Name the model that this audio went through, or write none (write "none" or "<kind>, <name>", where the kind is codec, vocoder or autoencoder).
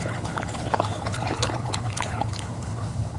codec, HILCodec